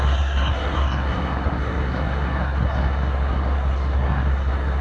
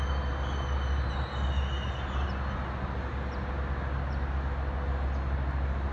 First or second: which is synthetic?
first